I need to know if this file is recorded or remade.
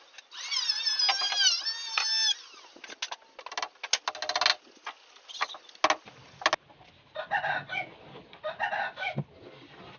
recorded